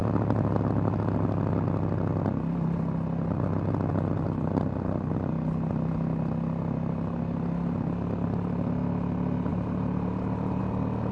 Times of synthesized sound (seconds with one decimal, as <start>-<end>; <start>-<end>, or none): 9.5-10.6

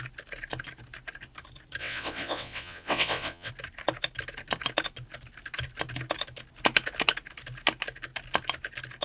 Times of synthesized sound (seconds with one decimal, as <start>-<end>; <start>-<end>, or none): 1.8-3.5

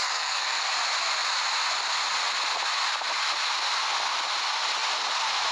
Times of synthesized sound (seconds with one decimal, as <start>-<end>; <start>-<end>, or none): 0.0-0.7

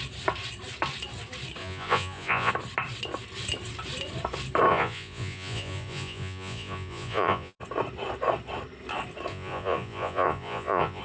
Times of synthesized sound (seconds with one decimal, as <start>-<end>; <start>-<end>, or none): 1.6-2.5; 4.7-7.6; 9.3-11.0

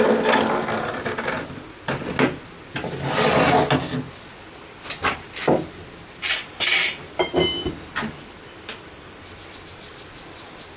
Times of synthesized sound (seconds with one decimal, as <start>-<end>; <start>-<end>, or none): none

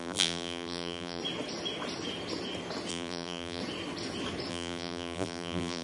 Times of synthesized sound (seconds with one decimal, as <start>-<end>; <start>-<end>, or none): 0.0-1.2; 2.9-3.6; 4.5-5.8

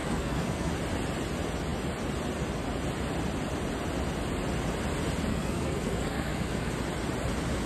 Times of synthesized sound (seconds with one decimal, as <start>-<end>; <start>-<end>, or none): 0.0-0.7; 5.3-6.7

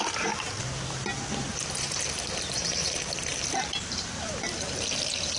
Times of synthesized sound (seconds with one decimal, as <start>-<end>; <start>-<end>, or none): 1.5-4.7